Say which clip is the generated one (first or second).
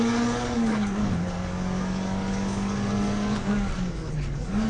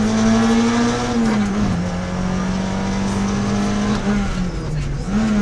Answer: first